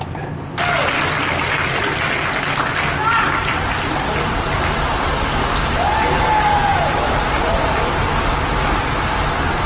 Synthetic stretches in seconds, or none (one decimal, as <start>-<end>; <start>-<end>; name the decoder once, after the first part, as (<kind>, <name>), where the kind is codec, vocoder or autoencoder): none